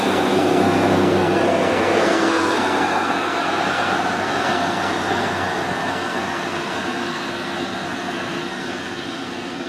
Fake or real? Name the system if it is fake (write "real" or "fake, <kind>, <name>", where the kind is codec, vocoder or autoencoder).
fake, codec, SNAC